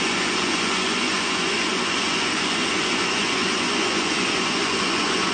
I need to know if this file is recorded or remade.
remade